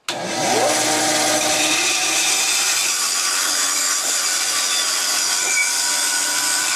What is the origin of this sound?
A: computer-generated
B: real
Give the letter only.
B